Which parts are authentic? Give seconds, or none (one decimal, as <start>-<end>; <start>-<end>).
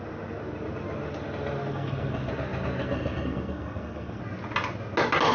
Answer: 0.0-1.7; 2.3-2.8; 4.2-5.3